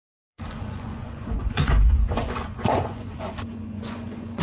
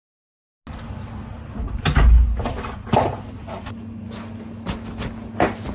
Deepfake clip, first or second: first